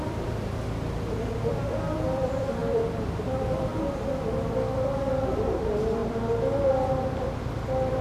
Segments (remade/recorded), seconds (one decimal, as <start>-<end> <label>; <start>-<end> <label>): 0.0-3.7 remade; 3.7-5.3 recorded; 5.3-6.0 remade; 6.0-7.4 recorded; 7.4-8.0 remade